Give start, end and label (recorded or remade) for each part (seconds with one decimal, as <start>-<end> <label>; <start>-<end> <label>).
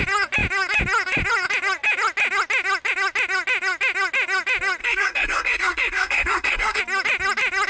0.0-4.8 recorded; 4.8-6.8 remade; 6.8-7.7 recorded